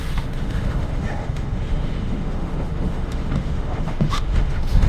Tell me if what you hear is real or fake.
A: fake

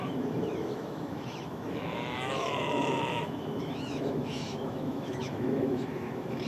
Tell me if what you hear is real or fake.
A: fake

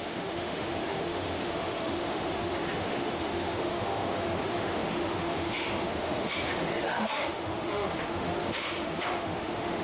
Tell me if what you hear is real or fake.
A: fake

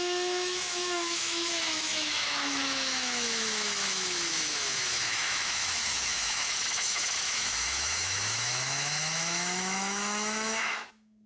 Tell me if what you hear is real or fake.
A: fake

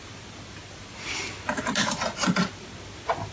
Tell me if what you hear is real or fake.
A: real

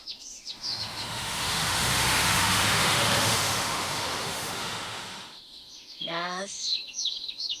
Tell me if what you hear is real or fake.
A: fake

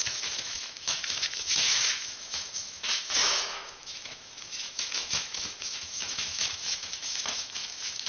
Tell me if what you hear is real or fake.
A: fake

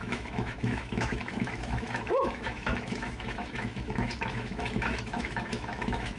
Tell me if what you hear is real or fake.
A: fake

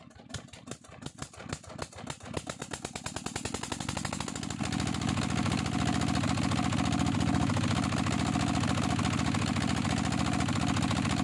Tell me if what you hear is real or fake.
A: real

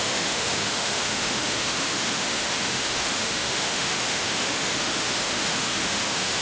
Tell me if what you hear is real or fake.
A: fake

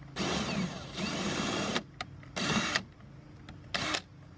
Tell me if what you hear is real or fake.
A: real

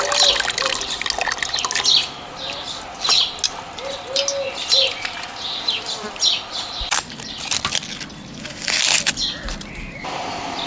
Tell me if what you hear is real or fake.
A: real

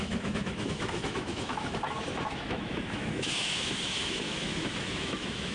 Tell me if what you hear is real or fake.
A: fake